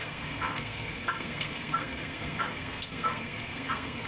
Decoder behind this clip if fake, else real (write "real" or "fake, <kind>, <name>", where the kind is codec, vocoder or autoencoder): fake, codec, SNAC